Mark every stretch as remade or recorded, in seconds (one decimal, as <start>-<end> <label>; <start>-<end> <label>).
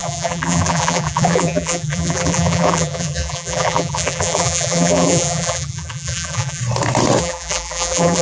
0.0-6.6 remade; 6.6-7.2 recorded; 7.2-8.2 remade